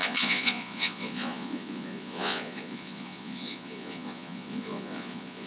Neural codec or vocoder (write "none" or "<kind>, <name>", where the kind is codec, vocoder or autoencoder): vocoder, Vocos